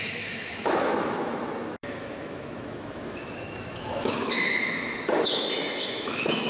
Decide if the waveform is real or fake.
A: fake